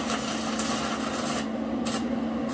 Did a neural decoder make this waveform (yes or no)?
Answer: no